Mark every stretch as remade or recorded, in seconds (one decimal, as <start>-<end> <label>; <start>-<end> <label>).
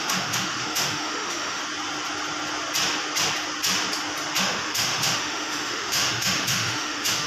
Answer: 0.0-1.6 remade; 1.6-4.4 recorded; 4.4-7.3 remade